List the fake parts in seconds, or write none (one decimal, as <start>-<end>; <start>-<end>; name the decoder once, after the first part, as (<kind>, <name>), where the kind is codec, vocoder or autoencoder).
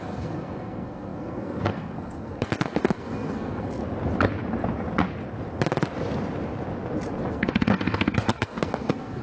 0.0-3.8 (codec, SNAC); 7.3-9.2